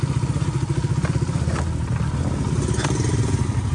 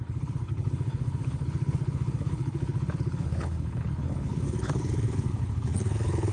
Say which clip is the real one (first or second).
first